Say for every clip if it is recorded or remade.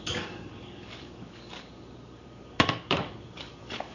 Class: remade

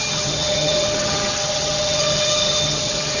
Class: remade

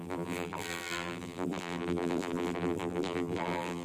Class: remade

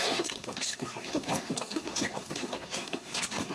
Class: remade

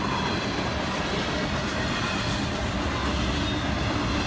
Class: recorded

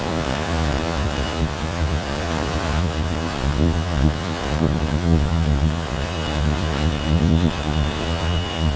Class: remade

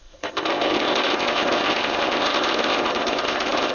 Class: remade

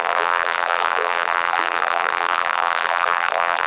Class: remade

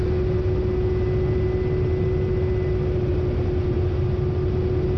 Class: recorded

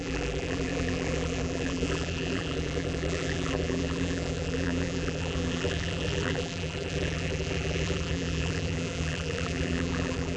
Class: remade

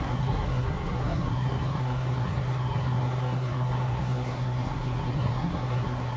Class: remade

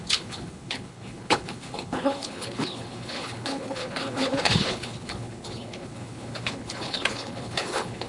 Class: remade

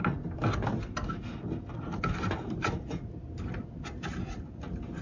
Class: recorded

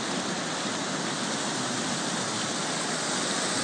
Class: recorded